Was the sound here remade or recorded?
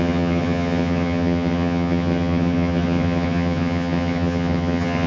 remade